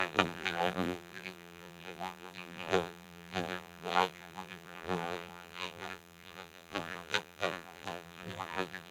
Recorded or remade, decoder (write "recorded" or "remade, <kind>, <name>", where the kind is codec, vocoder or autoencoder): remade, vocoder, BigVGAN v2